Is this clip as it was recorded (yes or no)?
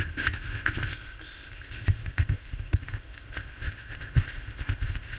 no